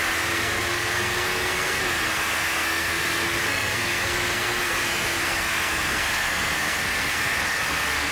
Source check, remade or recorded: remade